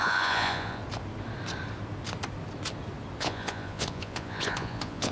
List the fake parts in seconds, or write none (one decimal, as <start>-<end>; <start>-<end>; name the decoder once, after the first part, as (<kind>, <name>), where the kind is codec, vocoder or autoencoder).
0.0-0.8 (vocoder, Vocos); 3.2-5.1